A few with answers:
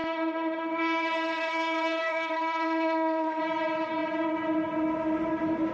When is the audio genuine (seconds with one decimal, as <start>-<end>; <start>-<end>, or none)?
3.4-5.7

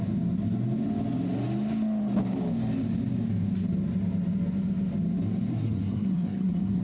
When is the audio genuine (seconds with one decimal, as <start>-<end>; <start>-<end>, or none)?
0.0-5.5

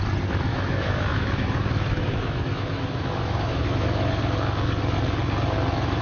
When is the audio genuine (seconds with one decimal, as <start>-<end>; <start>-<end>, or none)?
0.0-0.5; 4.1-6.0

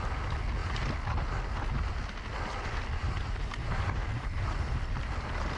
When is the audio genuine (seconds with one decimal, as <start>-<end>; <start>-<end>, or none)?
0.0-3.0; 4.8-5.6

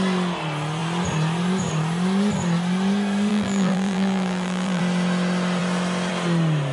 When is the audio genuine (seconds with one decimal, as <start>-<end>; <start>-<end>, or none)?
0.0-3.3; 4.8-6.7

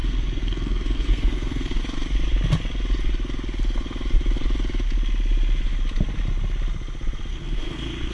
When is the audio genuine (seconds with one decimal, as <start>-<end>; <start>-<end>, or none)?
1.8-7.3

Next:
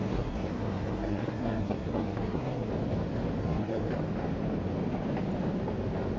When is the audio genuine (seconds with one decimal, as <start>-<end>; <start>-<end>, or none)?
2.7-3.4; 3.9-6.2